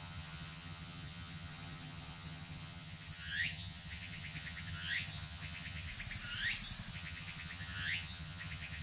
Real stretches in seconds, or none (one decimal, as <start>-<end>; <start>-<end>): 5.9-6.9